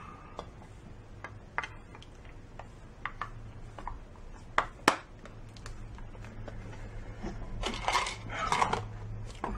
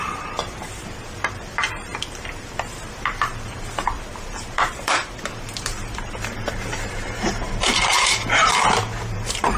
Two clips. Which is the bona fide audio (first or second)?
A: first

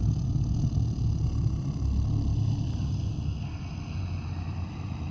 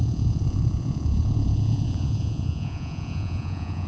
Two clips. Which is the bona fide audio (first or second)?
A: first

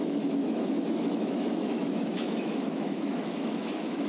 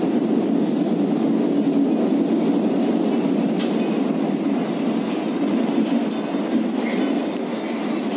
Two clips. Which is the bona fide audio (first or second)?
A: second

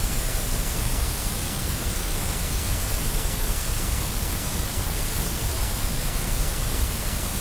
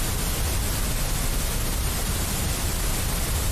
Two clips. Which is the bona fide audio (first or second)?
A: second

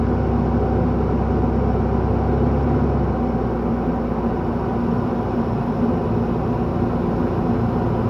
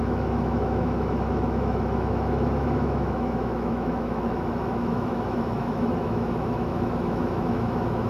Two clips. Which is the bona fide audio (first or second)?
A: first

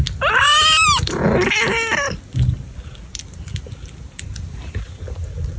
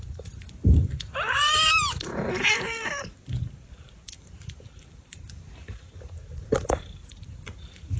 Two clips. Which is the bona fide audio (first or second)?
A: first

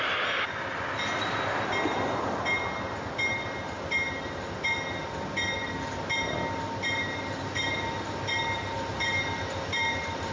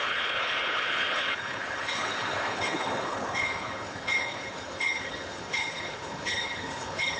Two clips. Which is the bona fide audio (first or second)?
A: first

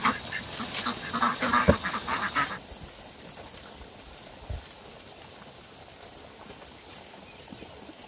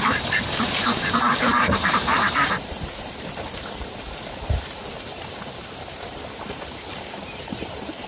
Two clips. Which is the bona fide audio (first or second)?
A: first